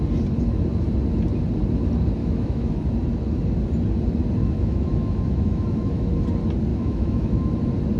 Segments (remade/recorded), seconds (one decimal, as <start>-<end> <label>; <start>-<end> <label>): 0.0-2.2 recorded; 2.2-2.7 remade; 2.7-4.4 recorded; 4.4-6.1 remade; 6.1-6.7 recorded; 6.7-7.5 remade; 7.5-8.0 recorded